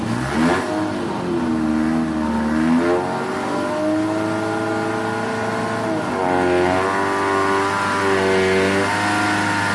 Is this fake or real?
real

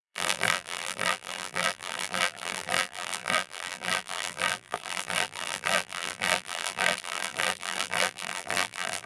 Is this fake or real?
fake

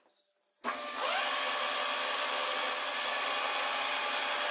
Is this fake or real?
real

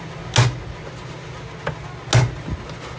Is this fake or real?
real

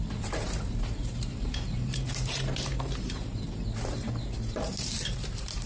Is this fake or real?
fake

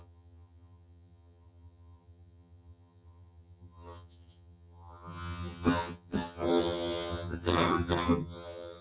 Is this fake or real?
fake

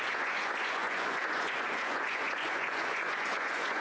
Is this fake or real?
fake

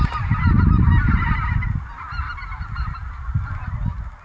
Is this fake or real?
real